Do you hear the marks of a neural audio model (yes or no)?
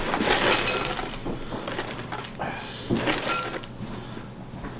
no